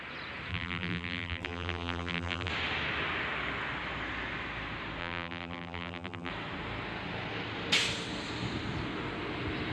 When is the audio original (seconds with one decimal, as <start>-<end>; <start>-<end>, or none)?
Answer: 0.0-0.5; 2.5-5.0; 6.3-9.7